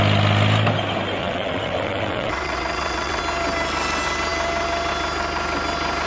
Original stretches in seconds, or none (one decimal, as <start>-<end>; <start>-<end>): 0.0-1.2; 3.2-6.1